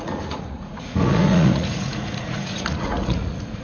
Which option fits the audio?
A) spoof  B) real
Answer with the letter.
A